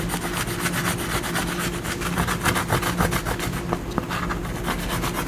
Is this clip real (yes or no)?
yes